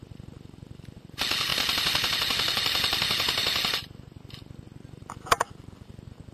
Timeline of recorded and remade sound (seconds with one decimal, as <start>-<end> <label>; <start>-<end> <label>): 0.0-6.3 recorded